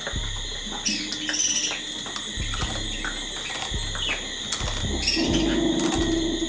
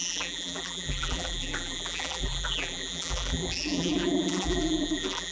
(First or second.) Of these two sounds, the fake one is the second